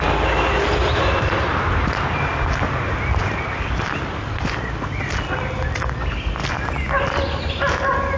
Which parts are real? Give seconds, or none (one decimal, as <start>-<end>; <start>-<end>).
0.0-8.2